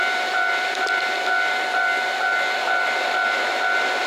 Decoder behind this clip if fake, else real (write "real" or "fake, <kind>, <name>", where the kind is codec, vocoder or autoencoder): fake, vocoder, BigVGAN v2